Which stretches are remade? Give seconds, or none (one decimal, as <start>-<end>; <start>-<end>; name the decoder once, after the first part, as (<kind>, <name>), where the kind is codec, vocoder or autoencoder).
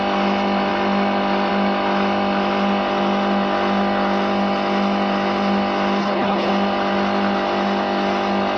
6.0-6.5 (codec, HILCodec)